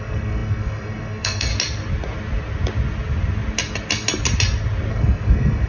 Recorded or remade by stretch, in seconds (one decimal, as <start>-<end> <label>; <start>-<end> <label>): 0.0-1.5 remade; 1.5-4.9 recorded; 4.9-5.7 remade